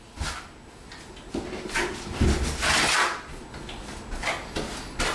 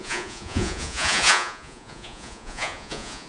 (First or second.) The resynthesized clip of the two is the second